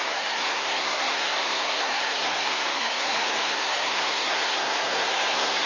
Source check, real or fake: fake